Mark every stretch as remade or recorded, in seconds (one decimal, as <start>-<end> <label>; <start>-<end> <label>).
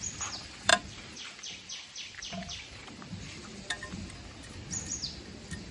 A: 0.0-0.7 recorded; 0.7-4.1 remade; 4.1-5.7 recorded